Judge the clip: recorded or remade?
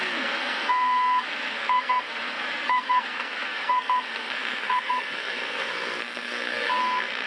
remade